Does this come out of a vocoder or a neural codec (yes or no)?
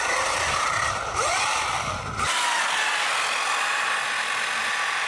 no